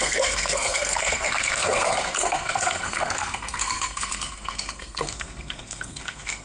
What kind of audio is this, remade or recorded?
remade